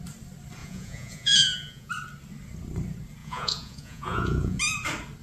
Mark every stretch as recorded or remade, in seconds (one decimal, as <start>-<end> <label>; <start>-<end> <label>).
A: 0.0-0.6 recorded; 0.6-1.9 remade; 1.9-3.2 recorded; 3.2-4.6 remade; 4.6-5.2 recorded